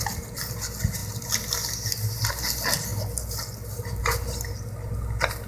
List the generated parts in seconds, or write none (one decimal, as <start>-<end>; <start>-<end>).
none